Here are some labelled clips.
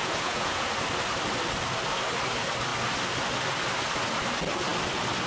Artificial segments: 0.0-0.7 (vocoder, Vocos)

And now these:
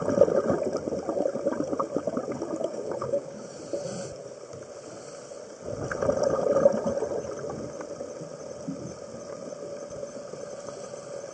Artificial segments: 2.6-3.6 (codec, DAC)

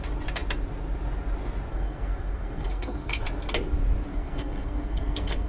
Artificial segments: 1.7-3.2 (codec, SNAC); 4.1-5.5